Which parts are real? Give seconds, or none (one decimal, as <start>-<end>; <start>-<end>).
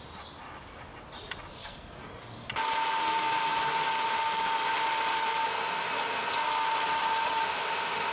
0.0-1.5; 2.1-8.1